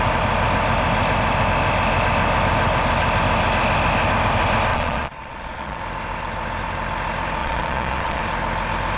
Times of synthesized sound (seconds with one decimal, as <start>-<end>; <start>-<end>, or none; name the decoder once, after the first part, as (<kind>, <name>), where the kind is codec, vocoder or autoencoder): 4.7-5.8 (vocoder, Vocos); 7.4-8.2